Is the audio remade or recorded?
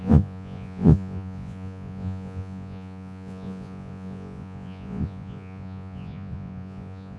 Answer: remade